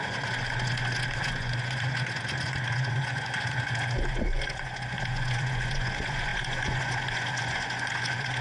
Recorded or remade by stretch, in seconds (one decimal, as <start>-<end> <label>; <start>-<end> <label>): 0.0-8.4 remade